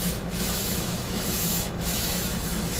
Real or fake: fake